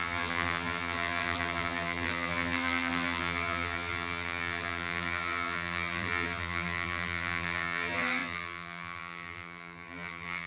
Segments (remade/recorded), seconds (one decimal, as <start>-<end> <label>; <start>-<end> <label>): 0.0-10.5 remade